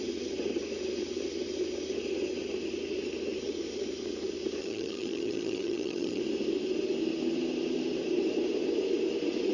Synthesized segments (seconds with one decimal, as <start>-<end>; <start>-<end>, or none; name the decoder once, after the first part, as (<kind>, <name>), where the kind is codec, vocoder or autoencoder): 4.6-6.2 (vocoder, HiFi-GAN)